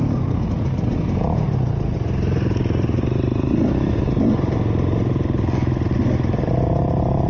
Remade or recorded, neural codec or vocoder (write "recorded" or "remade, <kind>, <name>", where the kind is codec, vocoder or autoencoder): recorded